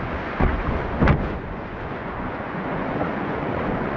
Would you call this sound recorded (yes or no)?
no